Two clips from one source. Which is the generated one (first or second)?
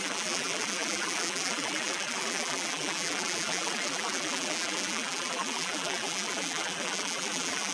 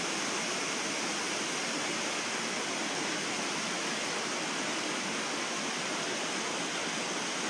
first